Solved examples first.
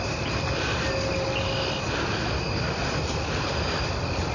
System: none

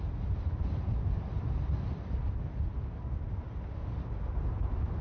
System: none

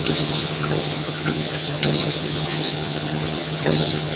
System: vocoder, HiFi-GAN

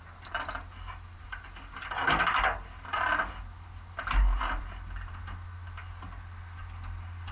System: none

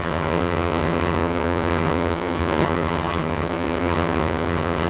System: vocoder, HiFi-GAN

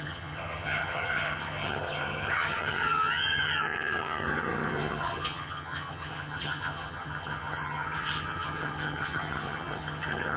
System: vocoder, HiFi-GAN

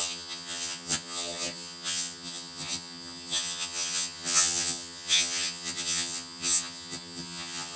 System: vocoder, HiFi-GAN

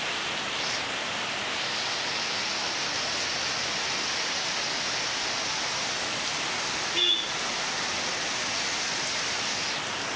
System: none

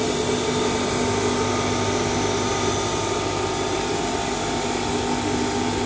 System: none